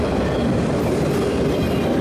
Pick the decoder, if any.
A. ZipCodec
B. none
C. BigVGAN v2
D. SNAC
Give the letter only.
B